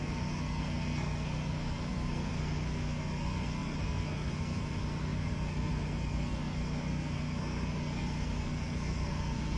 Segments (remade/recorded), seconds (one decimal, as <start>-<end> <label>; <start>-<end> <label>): 0.0-9.6 remade